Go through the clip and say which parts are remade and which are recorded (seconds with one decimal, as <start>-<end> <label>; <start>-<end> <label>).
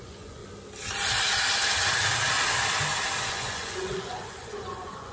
0.0-0.4 remade; 0.4-3.2 recorded; 3.2-5.1 remade